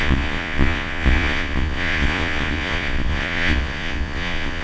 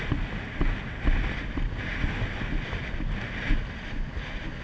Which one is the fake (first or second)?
first